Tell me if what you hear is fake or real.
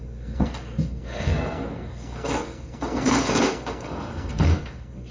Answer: fake